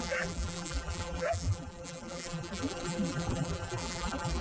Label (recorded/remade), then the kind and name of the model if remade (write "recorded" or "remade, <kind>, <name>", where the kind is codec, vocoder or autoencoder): remade, vocoder, BigVGAN v2